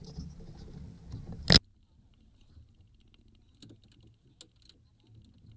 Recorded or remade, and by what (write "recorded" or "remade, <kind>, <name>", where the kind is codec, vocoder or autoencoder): recorded